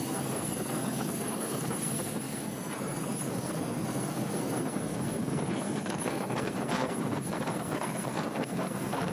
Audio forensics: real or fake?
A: fake